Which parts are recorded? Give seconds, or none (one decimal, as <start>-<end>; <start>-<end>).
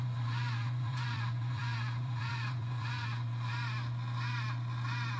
3.5-5.2